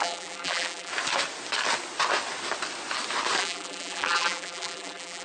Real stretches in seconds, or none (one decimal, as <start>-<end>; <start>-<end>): 0.9-3.4